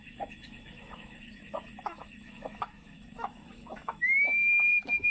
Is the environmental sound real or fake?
fake